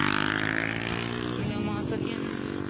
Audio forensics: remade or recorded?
recorded